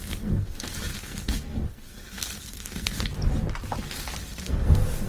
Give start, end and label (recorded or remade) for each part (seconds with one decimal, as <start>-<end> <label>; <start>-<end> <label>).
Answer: 0.0-3.1 remade; 3.1-4.4 recorded; 4.4-5.1 remade